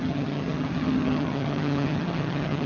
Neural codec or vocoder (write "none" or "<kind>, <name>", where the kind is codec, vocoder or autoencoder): vocoder, HiFi-GAN